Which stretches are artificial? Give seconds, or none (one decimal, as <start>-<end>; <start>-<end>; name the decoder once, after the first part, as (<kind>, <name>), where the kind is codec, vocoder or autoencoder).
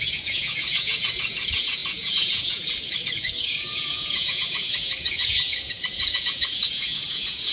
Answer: 0.0-7.5 (vocoder, Vocos)